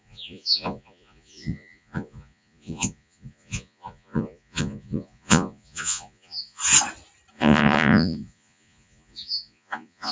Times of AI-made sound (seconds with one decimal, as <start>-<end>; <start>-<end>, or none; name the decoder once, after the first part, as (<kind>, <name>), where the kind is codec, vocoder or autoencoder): 0.0-6.6 (vocoder, Vocos); 7.3-10.1